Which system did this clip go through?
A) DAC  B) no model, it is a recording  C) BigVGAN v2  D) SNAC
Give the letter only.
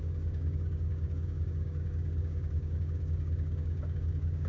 A